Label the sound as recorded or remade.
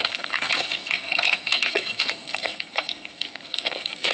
remade